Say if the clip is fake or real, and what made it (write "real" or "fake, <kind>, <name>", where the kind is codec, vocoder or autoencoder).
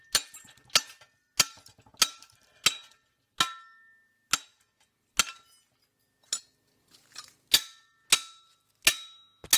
real